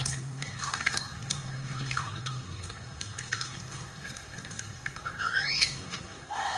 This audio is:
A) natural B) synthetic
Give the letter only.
B